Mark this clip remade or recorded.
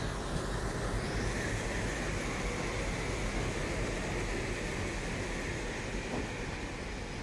recorded